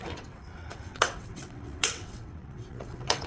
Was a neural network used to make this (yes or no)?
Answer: yes